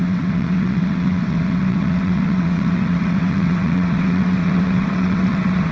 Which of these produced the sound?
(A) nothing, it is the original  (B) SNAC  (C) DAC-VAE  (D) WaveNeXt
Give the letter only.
D